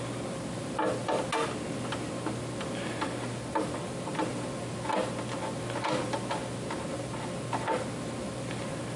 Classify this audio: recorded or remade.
recorded